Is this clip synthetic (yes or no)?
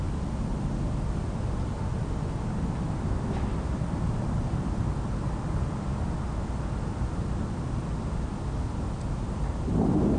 no